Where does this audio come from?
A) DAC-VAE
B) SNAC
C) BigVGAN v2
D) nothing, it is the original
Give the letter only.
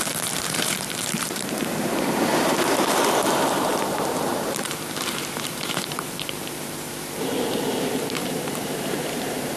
C